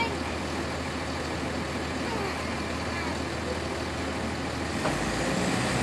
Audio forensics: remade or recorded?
recorded